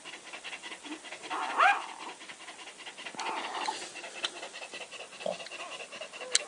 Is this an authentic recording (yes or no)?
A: yes